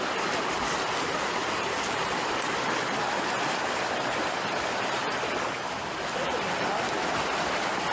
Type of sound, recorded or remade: recorded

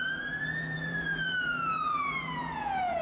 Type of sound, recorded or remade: remade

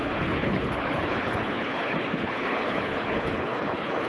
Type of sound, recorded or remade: remade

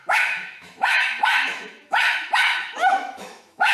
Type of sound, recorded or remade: remade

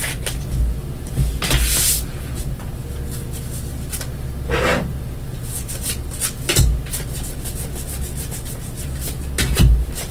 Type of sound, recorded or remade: recorded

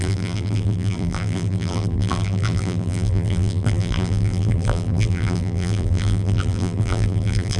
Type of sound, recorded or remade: remade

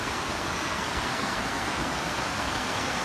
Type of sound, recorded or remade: remade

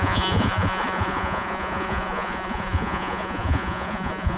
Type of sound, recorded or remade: remade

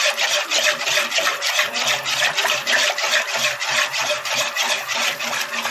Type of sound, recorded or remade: recorded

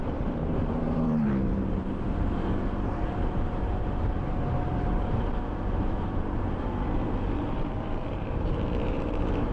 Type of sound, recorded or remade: remade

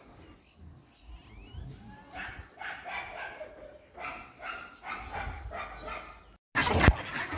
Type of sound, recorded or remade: recorded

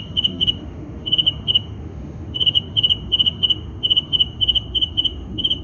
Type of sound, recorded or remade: remade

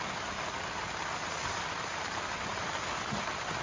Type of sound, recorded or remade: recorded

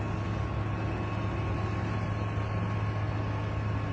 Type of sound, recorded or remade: recorded